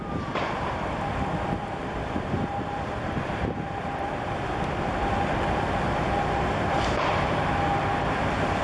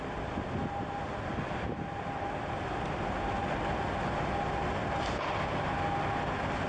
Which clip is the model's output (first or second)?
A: first